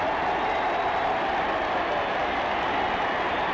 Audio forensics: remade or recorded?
recorded